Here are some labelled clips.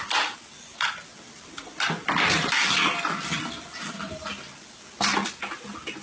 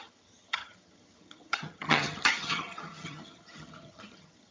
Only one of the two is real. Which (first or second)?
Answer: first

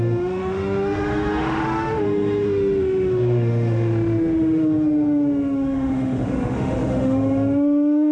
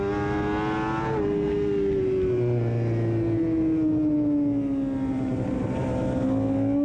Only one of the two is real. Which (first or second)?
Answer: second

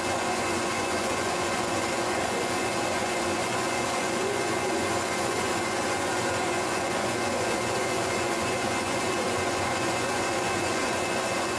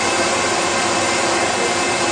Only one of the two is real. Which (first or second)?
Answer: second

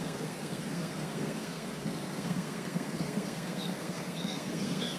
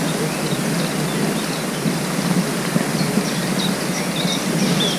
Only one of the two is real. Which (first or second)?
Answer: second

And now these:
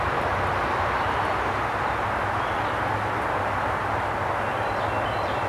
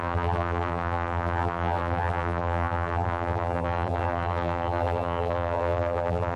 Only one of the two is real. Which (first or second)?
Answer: first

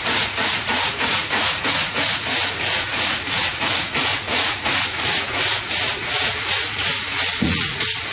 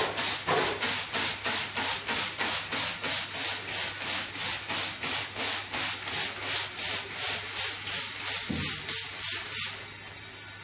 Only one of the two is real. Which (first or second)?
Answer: second